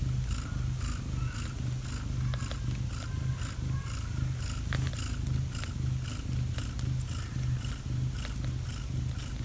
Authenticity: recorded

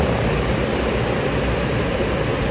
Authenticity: recorded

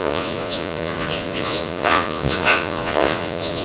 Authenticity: remade